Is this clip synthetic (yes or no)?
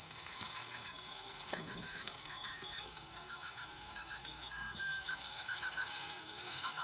yes